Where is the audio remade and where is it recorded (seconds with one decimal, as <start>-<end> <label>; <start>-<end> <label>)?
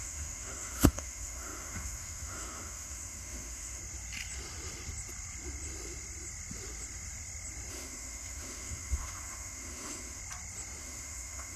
0.0-3.8 remade; 3.8-7.7 recorded; 7.7-10.2 remade; 10.2-10.8 recorded; 10.8-11.6 remade